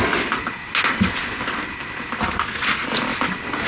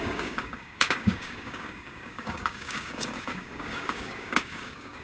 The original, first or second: first